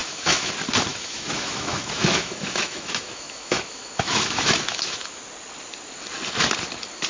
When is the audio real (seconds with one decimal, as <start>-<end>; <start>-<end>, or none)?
0.5-0.9; 5.2-7.1